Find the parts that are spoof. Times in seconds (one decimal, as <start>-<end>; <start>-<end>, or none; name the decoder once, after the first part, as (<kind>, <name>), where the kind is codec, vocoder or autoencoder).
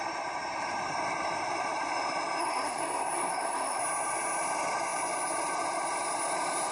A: 2.4-3.8 (codec, SNAC)